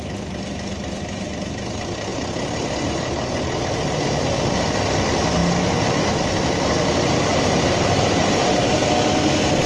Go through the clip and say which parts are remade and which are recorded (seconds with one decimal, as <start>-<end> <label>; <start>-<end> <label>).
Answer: 0.0-2.1 recorded; 2.1-4.3 remade; 4.3-7.3 recorded; 7.3-8.8 remade; 8.8-9.7 recorded